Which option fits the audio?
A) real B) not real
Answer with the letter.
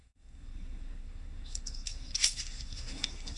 B